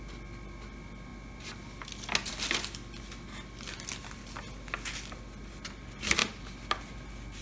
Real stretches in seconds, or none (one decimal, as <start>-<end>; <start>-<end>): 0.0-7.4